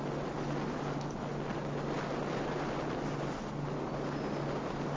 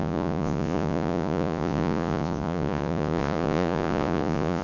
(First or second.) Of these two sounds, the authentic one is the first